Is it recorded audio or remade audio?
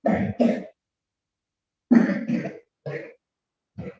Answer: recorded